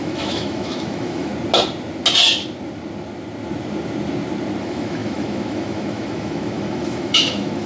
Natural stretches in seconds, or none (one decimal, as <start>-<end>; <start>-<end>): 1.3-4.6